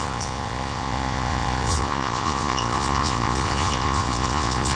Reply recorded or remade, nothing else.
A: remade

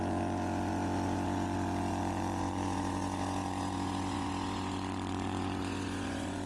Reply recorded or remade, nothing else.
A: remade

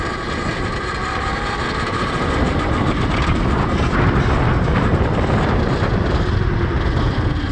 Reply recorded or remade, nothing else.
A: recorded